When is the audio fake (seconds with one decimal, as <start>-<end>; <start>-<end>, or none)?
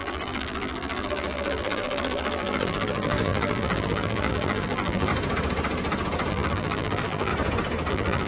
0.0-5.1; 6.3-7.3; 7.9-8.3